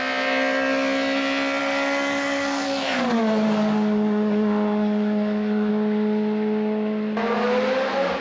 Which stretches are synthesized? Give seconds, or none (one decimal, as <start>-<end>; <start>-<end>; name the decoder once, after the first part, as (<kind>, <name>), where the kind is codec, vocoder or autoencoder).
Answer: 1.6-5.7 (codec, DAC)